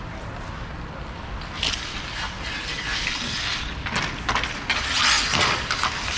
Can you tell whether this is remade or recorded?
recorded